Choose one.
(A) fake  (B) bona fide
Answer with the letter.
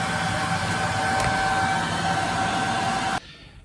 B